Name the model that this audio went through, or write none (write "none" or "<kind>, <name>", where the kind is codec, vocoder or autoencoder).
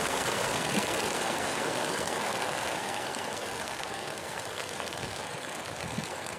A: codec, SNAC